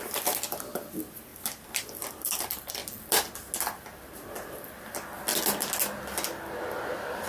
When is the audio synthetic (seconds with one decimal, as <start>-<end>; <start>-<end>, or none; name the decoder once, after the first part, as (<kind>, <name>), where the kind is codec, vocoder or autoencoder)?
0.0-2.8 (vocoder, BigVGAN v2); 3.8-5.3